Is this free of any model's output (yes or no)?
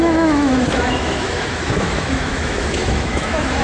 no